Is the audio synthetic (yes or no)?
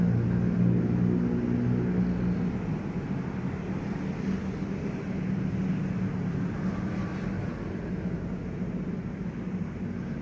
no